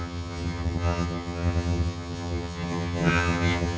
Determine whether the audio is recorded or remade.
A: remade